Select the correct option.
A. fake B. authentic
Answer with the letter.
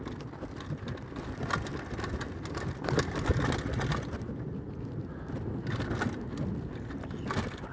B